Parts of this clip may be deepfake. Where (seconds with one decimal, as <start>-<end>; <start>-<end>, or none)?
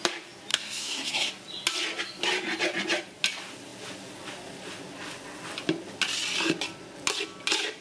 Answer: 0.5-1.3